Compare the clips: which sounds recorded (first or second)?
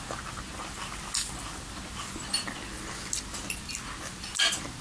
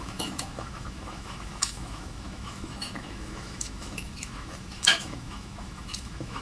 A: first